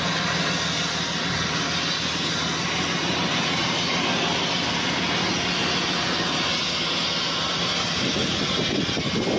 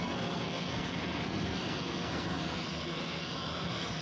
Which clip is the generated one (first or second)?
second